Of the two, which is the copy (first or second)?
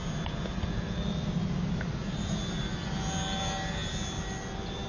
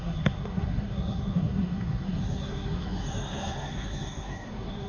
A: second